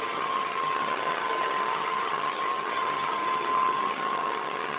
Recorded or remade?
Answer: remade